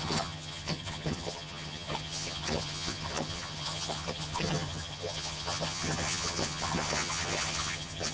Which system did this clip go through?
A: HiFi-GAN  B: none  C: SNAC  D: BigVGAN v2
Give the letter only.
A